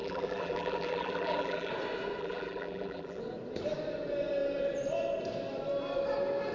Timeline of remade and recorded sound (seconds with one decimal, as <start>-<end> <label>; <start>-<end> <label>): 0.0-1.7 remade; 1.7-2.2 recorded; 2.2-3.2 remade; 3.2-6.5 recorded